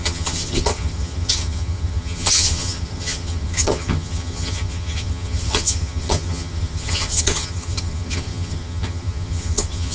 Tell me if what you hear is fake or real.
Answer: fake